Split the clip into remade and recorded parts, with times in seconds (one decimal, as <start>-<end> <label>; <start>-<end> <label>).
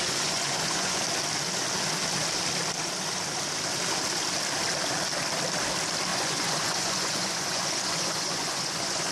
0.0-1.0 remade; 1.0-6.1 recorded; 6.1-9.1 remade